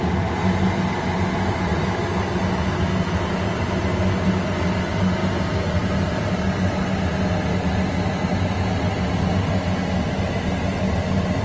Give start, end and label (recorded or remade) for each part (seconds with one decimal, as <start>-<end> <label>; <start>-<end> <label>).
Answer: 0.0-11.4 recorded